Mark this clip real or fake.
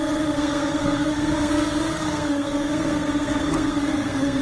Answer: fake